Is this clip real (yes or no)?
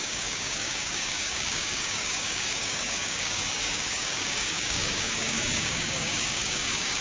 no